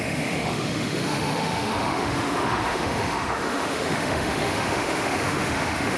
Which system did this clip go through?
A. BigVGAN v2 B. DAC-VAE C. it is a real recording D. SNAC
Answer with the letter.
B